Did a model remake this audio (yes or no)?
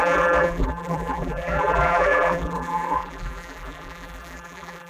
yes